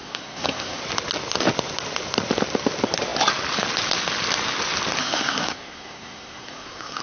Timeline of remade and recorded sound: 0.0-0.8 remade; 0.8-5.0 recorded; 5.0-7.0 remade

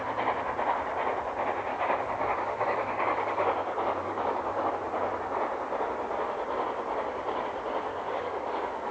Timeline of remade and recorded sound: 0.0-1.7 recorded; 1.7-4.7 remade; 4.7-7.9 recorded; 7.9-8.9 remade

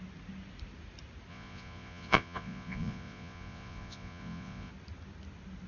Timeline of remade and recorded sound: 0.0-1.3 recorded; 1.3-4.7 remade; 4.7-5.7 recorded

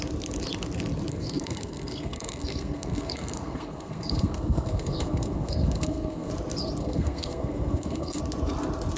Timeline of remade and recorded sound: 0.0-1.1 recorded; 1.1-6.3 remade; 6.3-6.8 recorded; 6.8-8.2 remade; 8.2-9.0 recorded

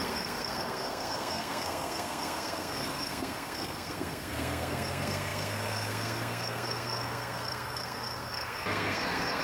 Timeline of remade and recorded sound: 0.0-9.4 remade

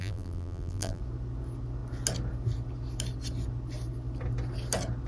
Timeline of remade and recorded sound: 0.0-1.0 remade; 1.0-5.1 recorded

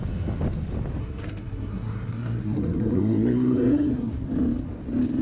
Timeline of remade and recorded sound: 0.0-1.0 recorded; 1.0-4.1 remade; 4.1-5.2 recorded